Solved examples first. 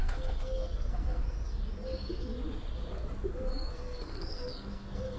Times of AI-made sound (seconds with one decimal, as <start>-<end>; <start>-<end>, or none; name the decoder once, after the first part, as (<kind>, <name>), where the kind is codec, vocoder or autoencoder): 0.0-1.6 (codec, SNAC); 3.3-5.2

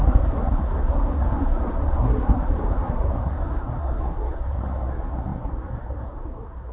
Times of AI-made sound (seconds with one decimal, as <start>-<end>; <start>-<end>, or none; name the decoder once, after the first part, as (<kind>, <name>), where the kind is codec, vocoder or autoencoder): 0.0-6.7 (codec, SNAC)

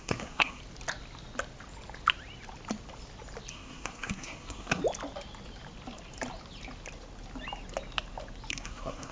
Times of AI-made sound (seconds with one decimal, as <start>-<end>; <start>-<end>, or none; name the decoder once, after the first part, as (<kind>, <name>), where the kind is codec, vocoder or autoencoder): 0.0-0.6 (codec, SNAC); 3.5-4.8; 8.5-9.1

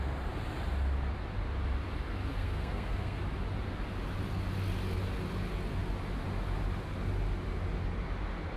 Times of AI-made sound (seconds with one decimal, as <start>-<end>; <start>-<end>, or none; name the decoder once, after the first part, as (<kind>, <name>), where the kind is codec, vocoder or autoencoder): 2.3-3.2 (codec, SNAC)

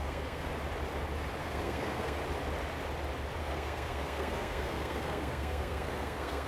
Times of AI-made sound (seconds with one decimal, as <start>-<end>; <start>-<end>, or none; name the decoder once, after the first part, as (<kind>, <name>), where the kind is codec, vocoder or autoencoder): 0.0-0.5 (codec, SNAC); 1.4-2.2; 3.4-6.5